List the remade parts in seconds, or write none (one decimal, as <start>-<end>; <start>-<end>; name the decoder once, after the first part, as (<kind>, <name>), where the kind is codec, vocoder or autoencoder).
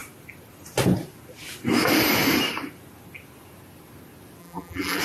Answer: 4.4-5.0 (vocoder, BigVGAN v2)